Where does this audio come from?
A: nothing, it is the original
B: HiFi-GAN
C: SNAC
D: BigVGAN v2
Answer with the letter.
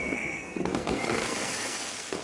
C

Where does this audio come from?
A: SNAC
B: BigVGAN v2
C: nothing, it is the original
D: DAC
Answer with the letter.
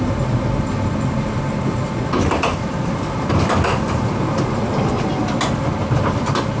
C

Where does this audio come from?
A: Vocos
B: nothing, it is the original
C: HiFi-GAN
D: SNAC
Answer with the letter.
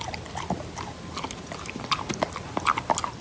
B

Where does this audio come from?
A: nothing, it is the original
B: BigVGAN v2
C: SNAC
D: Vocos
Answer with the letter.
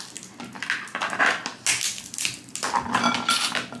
A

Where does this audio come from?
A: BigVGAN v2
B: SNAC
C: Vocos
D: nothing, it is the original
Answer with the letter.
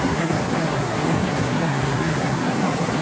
B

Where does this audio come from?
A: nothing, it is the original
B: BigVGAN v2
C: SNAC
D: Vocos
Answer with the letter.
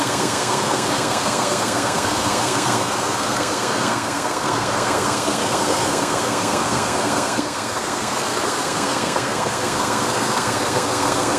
C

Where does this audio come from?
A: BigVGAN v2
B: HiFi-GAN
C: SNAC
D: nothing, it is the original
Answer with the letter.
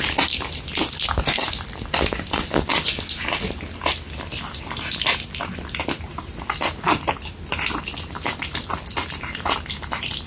D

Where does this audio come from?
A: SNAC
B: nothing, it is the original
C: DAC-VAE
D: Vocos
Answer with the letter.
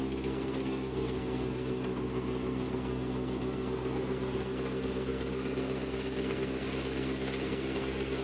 A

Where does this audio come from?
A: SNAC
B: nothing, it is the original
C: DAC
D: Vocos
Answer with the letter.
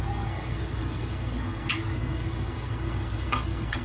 A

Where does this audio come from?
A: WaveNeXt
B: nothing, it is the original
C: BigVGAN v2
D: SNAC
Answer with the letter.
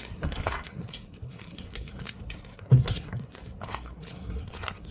D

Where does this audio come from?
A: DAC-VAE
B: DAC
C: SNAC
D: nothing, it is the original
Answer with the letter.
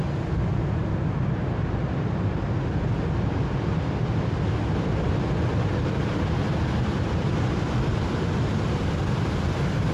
D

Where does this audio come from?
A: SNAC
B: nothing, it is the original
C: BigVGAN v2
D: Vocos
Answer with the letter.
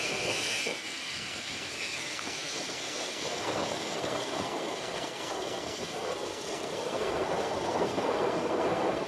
A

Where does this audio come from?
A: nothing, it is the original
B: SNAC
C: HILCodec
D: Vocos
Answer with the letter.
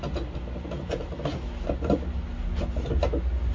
A